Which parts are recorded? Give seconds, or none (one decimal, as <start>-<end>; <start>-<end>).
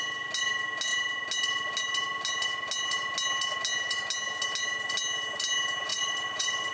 0.0-5.9